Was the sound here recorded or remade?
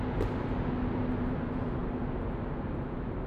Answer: recorded